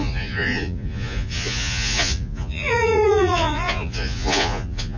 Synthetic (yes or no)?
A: yes